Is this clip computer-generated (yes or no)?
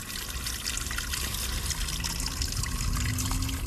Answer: no